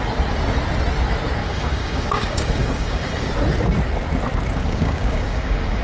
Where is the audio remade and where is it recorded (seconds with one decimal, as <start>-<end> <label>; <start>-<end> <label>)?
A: 0.0-1.4 recorded; 1.4-3.3 remade; 3.3-4.6 recorded; 4.6-5.8 remade